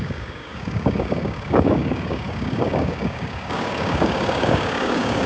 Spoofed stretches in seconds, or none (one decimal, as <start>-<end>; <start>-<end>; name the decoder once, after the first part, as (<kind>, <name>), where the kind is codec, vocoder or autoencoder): 0.0-5.3 (codec, DAC)